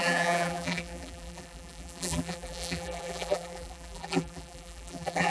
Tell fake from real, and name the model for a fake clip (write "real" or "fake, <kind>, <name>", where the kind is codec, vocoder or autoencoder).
fake, vocoder, BigVGAN v2